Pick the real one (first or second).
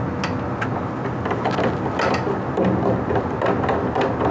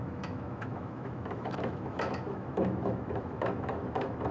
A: first